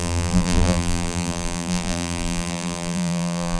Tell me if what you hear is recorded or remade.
remade